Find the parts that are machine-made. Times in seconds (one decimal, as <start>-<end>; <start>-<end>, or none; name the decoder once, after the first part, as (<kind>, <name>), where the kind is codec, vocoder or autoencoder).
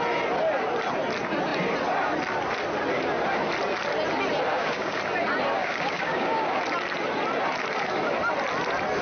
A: 4.5-5.0 (codec, DAC); 5.6-6.6